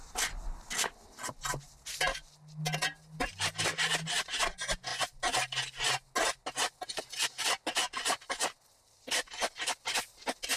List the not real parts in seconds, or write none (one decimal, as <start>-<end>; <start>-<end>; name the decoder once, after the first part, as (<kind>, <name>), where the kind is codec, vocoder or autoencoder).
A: none